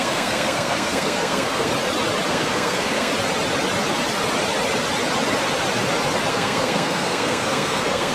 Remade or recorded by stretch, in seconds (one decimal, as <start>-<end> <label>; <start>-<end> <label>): 0.0-1.7 remade; 1.7-2.3 recorded; 2.3-3.1 remade; 3.1-6.3 recorded; 6.3-8.1 remade

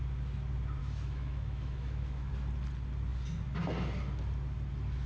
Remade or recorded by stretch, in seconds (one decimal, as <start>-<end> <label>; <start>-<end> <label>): 0.0-0.8 recorded; 0.8-2.3 remade; 2.3-5.1 recorded

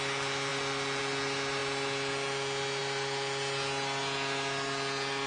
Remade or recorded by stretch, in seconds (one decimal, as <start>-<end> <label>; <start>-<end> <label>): 0.0-5.3 recorded

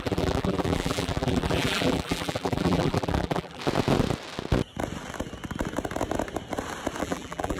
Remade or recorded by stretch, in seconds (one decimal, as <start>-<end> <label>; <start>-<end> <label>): 0.0-3.6 remade; 3.6-7.0 recorded; 7.0-7.6 remade